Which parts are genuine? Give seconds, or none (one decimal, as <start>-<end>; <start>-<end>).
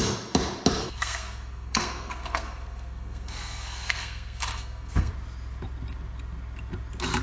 0.0-0.8; 5.1-7.2